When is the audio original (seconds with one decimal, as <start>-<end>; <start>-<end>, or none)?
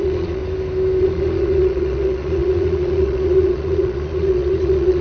0.4-1.0